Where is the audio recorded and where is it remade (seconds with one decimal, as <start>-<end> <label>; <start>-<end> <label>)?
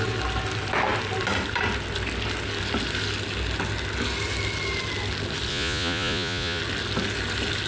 0.0-5.5 recorded; 5.5-6.6 remade; 6.6-7.7 recorded